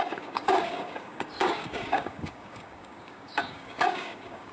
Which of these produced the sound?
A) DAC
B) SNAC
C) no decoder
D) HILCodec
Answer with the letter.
A